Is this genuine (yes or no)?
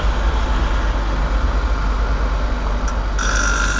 yes